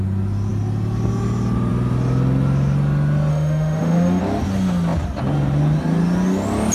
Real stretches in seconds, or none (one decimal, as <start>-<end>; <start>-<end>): 0.0-3.3; 4.2-6.7